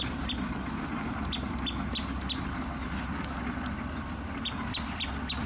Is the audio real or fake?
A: fake